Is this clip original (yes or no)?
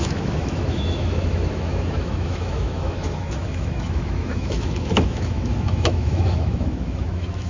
no